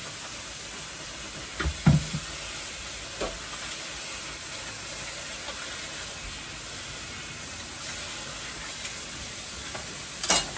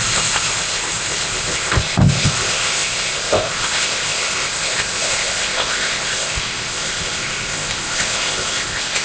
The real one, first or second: first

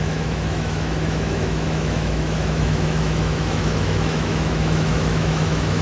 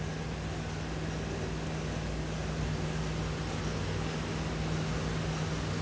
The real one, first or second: second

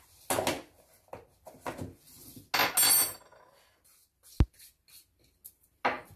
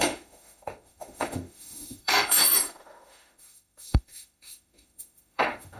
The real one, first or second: first